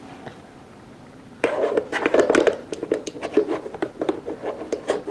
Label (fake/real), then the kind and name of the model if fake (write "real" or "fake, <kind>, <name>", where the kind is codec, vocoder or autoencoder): real